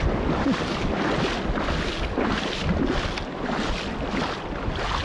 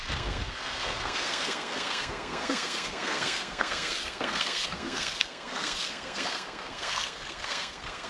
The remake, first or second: second